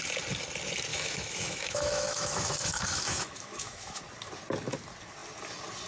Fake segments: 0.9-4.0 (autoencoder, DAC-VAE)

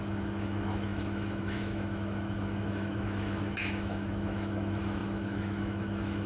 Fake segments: 0.0-6.3 (autoencoder, DAC-VAE)

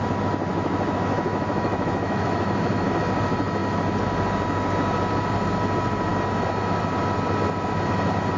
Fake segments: 0.5-3.0 (autoencoder, DAC-VAE)